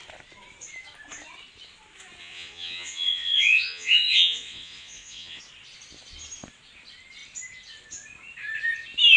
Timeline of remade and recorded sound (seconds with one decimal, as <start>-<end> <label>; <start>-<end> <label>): 0.0-2.2 recorded; 2.2-5.4 remade; 5.4-9.2 recorded